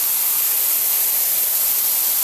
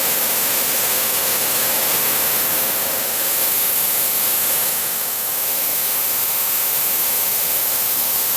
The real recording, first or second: first